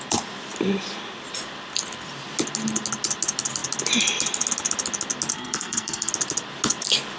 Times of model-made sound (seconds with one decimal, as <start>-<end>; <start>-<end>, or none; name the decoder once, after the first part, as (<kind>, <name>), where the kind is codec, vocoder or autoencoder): 5.3-6.1 (codec, SNAC)